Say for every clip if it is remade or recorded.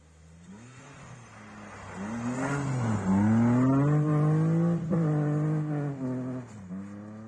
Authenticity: recorded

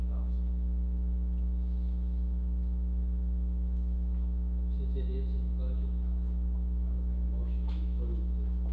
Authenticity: remade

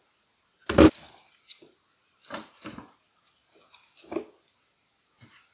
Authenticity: recorded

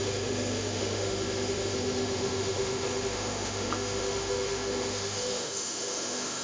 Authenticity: remade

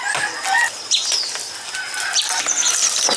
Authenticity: recorded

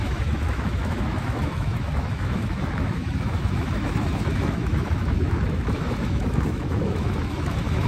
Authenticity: remade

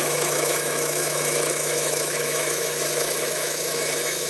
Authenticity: remade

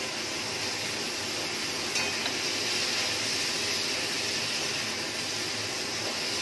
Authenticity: recorded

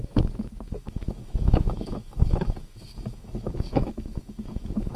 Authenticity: remade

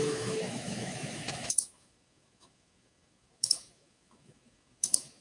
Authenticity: remade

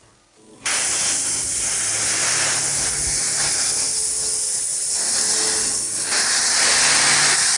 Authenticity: recorded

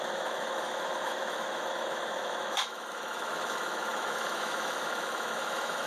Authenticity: remade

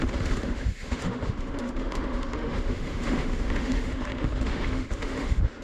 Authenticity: remade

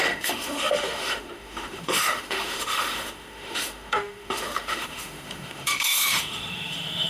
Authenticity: remade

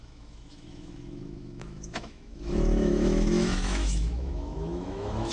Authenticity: remade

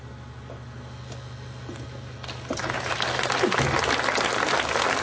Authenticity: recorded